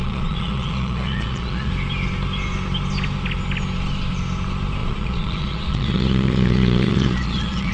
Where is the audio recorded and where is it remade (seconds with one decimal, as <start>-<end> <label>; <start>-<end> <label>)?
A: 0.0-1.7 remade; 1.7-4.8 recorded; 4.8-7.7 remade